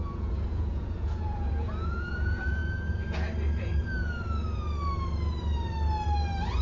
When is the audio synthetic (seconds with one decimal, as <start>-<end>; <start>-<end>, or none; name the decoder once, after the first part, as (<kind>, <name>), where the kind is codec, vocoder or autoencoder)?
0.0-2.6 (vocoder, Vocos)